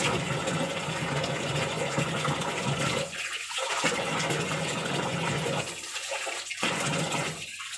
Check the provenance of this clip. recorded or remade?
remade